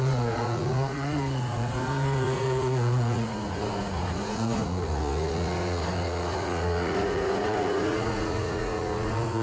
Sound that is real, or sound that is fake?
fake